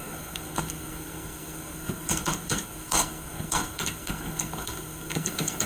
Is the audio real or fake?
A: fake